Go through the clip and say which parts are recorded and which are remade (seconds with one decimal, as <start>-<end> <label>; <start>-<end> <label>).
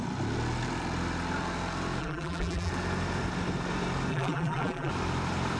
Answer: 0.0-2.0 recorded; 2.0-2.7 remade; 2.7-4.1 recorded; 4.1-4.9 remade; 4.9-5.6 recorded